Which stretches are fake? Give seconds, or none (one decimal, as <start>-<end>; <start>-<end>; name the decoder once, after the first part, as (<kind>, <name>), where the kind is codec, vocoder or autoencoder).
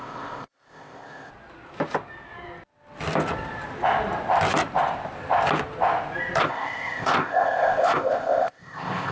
0.0-1.3 (codec, ZipCodec); 6.4-9.1